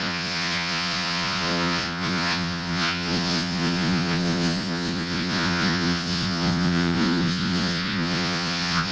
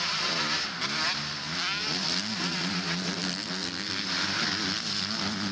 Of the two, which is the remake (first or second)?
first